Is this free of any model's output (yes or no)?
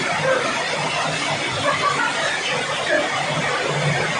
yes